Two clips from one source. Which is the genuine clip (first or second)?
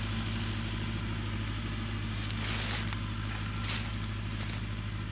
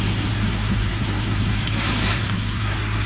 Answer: first